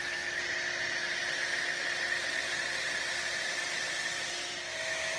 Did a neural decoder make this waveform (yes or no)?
no